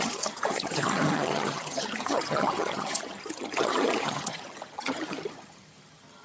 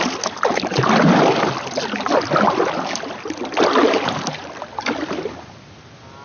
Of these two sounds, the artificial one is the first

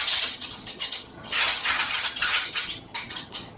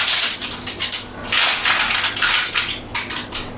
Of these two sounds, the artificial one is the first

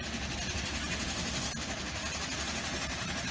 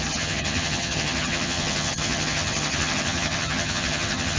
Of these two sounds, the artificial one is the second